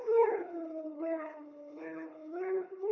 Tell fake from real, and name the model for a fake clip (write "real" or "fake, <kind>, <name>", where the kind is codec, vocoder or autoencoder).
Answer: fake, codec, HILCodec